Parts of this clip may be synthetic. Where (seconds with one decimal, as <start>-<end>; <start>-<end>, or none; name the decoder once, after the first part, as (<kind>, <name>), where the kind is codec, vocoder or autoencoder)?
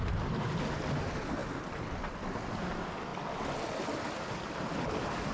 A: none